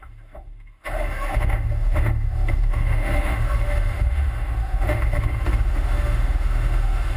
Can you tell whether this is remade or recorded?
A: remade